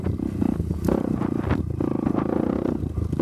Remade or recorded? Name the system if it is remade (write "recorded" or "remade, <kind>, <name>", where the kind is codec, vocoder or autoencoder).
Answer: recorded